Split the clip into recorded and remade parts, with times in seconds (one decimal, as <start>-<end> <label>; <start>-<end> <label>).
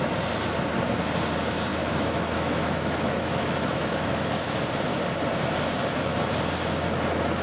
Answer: 0.0-1.7 recorded; 1.7-4.6 remade; 4.6-7.4 recorded